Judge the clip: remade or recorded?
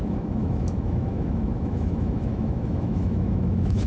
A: remade